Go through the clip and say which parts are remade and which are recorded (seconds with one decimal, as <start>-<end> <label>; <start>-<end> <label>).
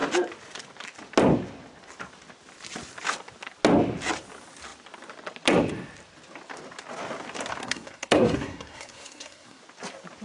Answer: 0.0-7.6 recorded; 7.6-9.6 remade; 9.6-10.2 recorded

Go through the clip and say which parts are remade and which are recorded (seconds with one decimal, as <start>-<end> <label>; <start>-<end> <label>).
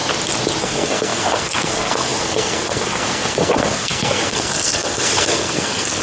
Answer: 0.0-0.6 recorded; 0.6-6.0 remade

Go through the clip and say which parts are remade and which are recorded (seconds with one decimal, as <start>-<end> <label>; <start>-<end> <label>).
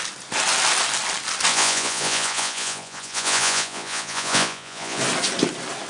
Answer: 0.0-1.5 recorded; 1.5-5.0 remade; 5.0-5.9 recorded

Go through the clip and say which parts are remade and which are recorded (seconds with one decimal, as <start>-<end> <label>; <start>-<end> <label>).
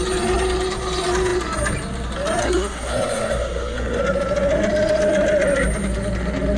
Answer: 0.0-2.4 recorded; 2.4-4.0 remade; 4.0-6.6 recorded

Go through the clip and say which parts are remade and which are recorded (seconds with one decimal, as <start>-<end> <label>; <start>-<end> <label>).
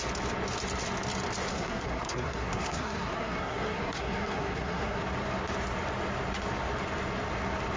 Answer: 0.0-1.5 recorded; 1.5-5.0 remade; 5.0-7.8 recorded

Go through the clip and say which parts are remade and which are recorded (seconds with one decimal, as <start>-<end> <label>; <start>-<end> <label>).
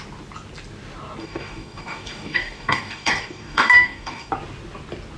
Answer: 0.0-1.2 recorded; 1.2-4.3 remade; 4.3-5.2 recorded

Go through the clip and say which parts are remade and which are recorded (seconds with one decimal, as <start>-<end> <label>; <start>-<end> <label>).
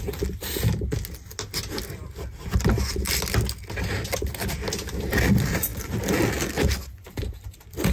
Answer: 0.0-7.9 recorded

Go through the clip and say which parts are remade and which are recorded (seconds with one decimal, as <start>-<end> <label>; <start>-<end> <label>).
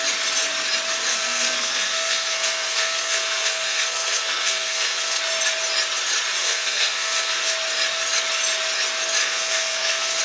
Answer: 0.0-1.1 recorded; 1.1-5.2 remade; 5.2-6.4 recorded; 6.4-7.5 remade; 7.5-9.2 recorded; 9.2-10.2 remade